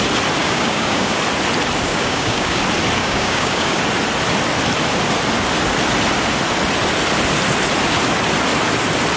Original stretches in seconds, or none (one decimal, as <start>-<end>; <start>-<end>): 0.0-0.4; 1.2-1.9; 2.6-3.0; 3.8-9.2